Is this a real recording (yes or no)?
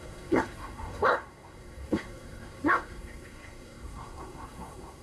no